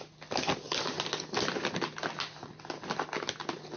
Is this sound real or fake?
real